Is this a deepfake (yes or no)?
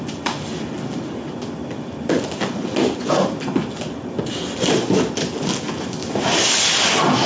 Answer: no